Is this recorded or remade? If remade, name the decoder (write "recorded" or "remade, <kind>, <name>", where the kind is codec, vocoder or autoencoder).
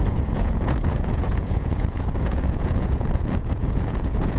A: remade, vocoder, Vocos